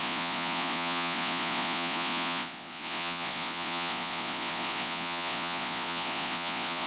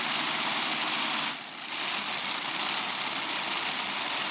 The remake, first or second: first